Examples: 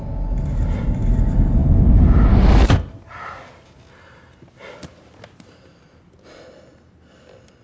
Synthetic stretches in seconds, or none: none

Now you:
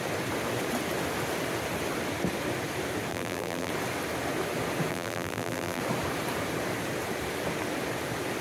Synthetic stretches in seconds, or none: 3.1-3.7 (vocoder, BigVGAN v2); 4.9-5.8

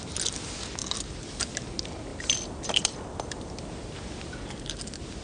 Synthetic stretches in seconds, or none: 0.8-1.5 (vocoder, BigVGAN v2); 2.1-4.8

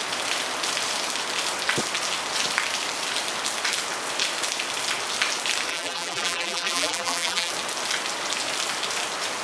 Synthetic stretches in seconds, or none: 5.7-7.5 (vocoder, BigVGAN v2)

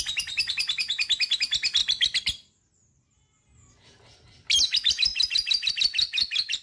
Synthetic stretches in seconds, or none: 5.1-5.7 (vocoder, BigVGAN v2)

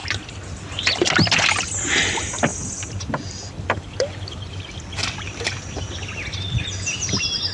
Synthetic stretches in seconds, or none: 0.0-0.8 (vocoder, BigVGAN v2); 2.5-5.6

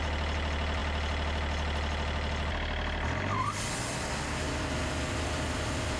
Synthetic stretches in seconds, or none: none